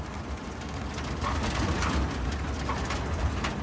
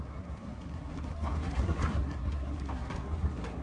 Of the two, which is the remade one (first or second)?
second